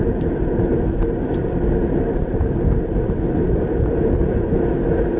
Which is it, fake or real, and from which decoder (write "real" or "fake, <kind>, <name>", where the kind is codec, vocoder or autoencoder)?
real